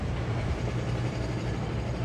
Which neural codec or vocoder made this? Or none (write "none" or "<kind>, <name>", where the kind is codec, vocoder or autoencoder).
none